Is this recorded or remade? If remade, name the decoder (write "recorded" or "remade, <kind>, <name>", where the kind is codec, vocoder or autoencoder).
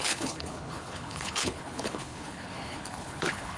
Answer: remade, codec, HILCodec